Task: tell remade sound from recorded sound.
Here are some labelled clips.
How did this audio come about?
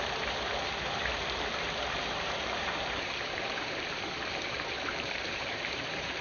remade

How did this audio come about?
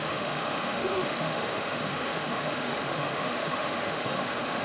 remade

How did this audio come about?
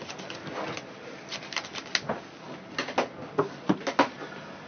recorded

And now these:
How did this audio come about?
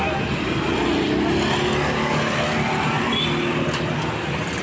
recorded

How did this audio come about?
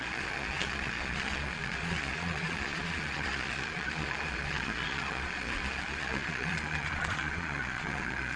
remade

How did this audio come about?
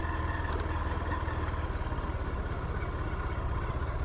recorded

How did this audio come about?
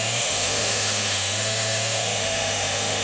remade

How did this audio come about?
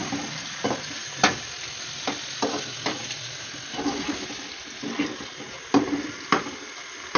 recorded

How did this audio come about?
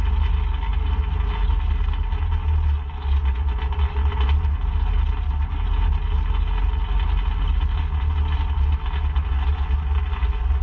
recorded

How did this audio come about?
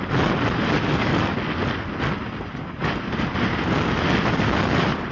recorded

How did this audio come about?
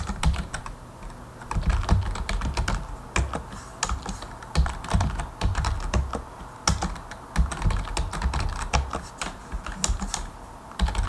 recorded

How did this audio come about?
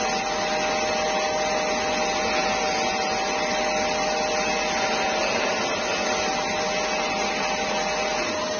recorded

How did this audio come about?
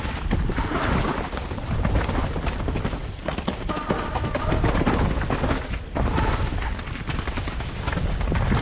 recorded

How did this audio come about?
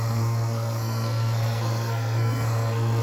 remade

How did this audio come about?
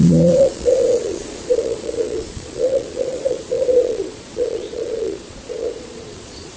remade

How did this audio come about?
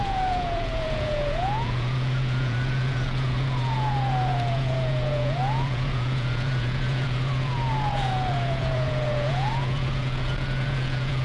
remade